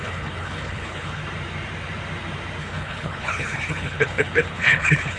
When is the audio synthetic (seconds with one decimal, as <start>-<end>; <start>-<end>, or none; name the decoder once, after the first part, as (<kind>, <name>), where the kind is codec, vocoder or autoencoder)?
0.0-1.2 (codec, HILCodec); 2.6-5.2